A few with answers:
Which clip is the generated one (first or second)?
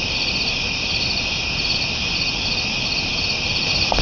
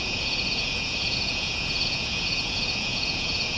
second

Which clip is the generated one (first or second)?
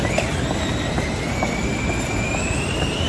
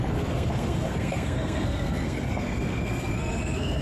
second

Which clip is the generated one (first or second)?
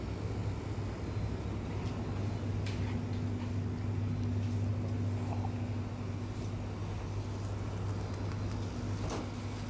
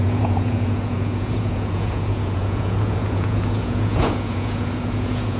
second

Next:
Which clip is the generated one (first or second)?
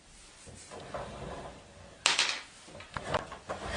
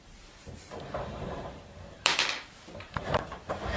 second